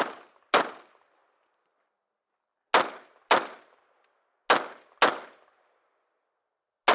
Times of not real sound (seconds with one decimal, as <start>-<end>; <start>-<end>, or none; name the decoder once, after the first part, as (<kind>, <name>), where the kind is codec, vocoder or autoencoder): none